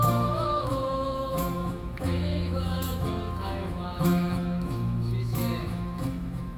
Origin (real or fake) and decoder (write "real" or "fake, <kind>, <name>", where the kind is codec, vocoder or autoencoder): fake, autoencoder, DAC-VAE